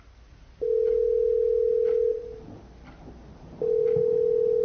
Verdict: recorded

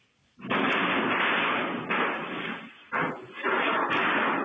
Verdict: recorded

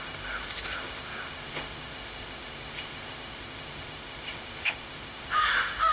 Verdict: remade